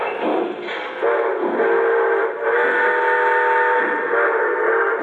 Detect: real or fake real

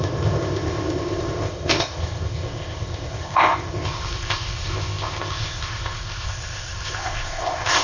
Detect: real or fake fake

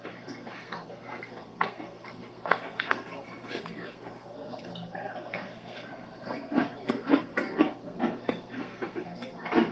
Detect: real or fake fake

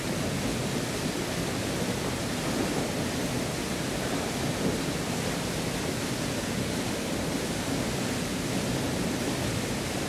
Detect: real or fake real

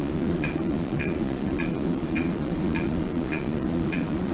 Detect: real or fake fake